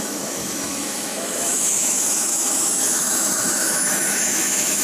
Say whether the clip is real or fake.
fake